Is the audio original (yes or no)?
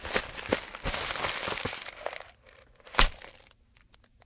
yes